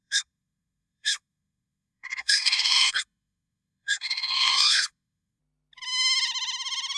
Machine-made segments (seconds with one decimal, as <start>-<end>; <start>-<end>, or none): 0.0-5.4